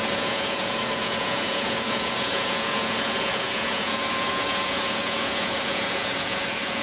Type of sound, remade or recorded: remade